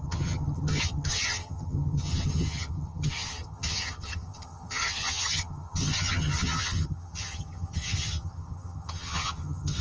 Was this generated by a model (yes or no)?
yes